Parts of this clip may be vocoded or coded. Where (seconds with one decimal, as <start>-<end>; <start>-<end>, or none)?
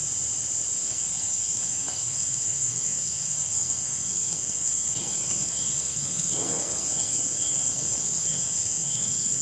0.8-9.4